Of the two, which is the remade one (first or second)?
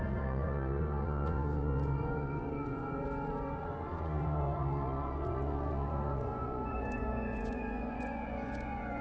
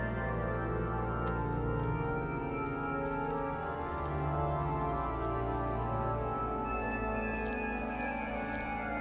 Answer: first